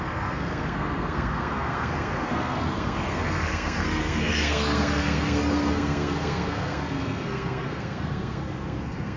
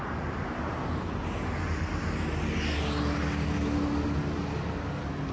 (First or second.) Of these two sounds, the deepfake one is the first